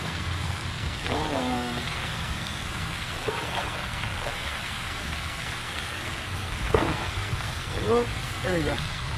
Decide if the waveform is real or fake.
fake